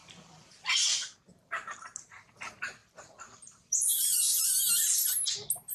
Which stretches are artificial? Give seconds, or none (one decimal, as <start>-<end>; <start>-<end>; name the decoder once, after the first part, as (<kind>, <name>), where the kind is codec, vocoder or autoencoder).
0.0-1.8 (vocoder, BigVGAN v2); 2.8-4.5